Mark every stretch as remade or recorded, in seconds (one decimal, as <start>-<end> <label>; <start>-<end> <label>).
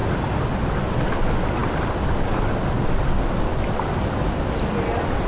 0.0-5.3 recorded